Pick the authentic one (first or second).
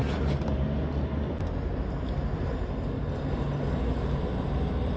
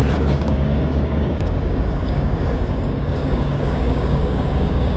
first